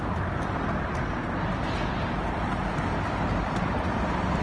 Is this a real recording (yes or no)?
yes